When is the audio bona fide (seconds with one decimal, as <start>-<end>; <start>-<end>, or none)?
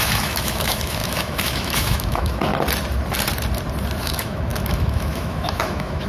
2.5-4.0